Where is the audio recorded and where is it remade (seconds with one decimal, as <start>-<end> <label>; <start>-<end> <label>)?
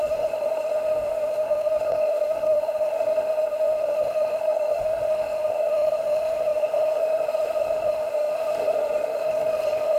0.0-10.0 remade